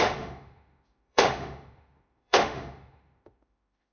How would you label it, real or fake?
fake